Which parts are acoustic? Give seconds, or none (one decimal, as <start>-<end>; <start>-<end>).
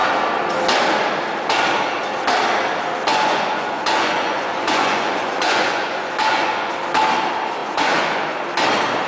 0.0-3.1; 6.7-7.6; 8.2-9.1